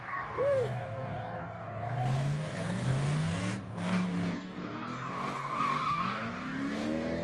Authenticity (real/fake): fake